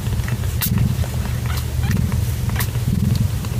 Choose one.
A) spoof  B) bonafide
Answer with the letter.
B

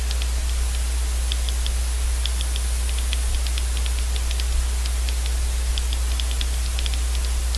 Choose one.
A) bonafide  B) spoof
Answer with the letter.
A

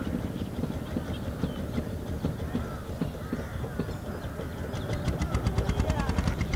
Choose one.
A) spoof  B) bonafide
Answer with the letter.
B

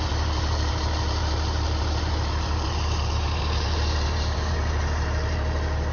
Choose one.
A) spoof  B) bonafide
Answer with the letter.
A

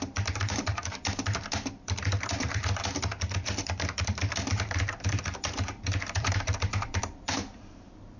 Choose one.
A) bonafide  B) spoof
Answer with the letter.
B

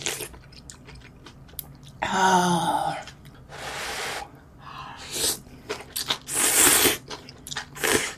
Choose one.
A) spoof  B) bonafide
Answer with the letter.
B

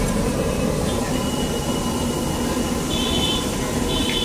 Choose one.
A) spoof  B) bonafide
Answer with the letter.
B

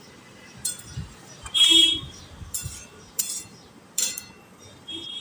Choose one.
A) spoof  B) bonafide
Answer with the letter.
A